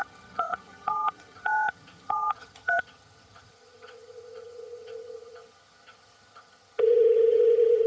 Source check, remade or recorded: remade